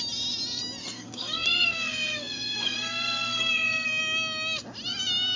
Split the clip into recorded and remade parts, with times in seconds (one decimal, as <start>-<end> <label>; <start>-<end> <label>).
0.0-0.8 recorded; 0.8-4.0 remade; 4.0-5.4 recorded